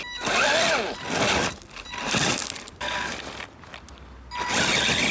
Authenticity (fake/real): real